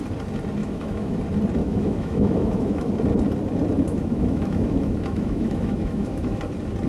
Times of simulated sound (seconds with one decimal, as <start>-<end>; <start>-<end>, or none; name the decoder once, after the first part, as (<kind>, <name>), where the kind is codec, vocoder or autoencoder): 0.6-1.2 (autoencoder, DAC-VAE); 1.6-2.9; 3.9-6.4